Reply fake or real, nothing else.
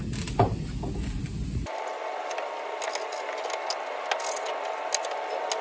real